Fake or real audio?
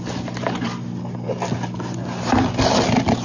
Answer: real